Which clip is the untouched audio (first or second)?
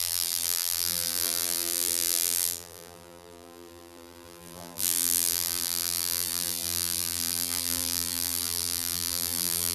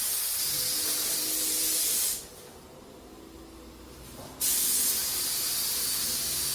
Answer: second